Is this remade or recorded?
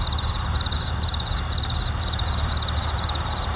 recorded